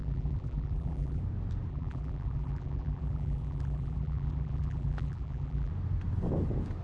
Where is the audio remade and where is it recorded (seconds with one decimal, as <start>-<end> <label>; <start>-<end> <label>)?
0.0-1.2 remade; 1.2-1.7 recorded; 1.7-5.7 remade; 5.7-6.8 recorded